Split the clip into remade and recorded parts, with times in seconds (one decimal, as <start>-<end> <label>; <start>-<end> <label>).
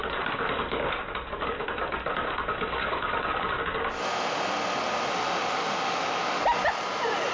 0.0-5.1 recorded; 5.1-6.4 remade; 6.4-7.3 recorded